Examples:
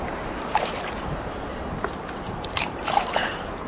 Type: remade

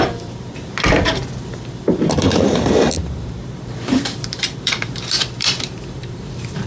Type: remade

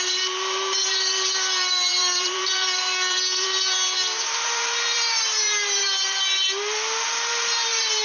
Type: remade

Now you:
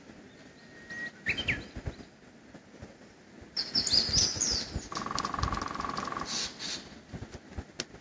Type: recorded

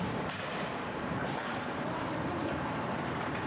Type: remade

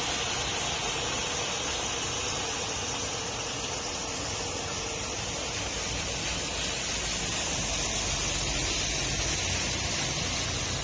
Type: recorded